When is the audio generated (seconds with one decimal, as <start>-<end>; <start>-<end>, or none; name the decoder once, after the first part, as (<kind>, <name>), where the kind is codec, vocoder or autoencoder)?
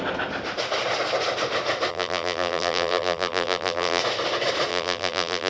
1.9-4.0 (vocoder, BigVGAN v2); 4.7-5.5